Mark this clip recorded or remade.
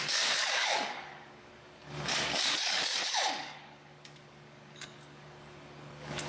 remade